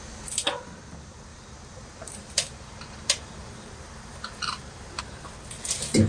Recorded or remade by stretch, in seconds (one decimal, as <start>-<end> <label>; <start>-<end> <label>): 0.0-1.3 recorded; 1.3-5.0 remade; 5.0-6.1 recorded